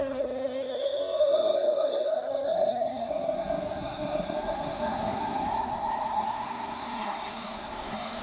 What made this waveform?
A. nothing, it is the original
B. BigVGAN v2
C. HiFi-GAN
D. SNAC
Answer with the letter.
D